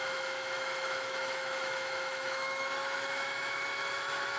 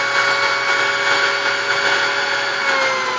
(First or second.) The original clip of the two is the second